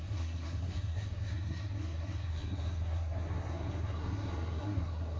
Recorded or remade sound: remade